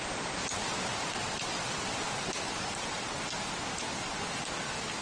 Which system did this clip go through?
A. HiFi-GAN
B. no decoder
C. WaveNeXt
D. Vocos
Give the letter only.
B